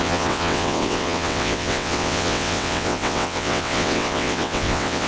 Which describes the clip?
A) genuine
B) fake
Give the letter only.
B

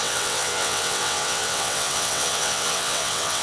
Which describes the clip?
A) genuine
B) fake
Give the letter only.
B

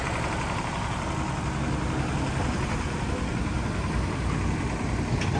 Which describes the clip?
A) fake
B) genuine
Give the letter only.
B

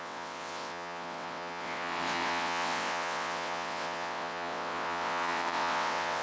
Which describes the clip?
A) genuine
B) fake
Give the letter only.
B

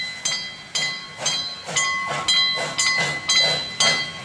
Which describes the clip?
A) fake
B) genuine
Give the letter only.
B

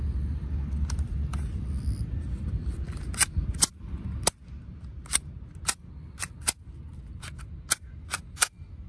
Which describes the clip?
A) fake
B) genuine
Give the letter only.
B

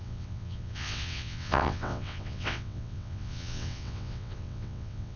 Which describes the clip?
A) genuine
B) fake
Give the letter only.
B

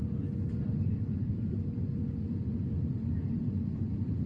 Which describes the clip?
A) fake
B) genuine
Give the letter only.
B